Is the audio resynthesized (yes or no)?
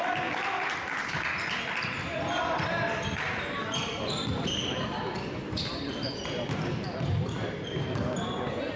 no